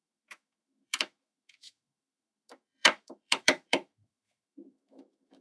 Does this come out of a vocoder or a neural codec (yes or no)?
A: yes